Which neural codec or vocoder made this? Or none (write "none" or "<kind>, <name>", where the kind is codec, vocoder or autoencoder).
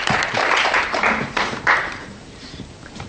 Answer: vocoder, BigVGAN v2